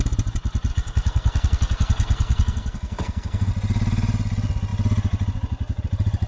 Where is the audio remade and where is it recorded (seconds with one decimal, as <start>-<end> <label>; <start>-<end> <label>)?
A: 0.0-0.7 recorded; 0.7-3.5 remade; 3.5-6.3 recorded